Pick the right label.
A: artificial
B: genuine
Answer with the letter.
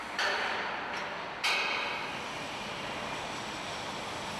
B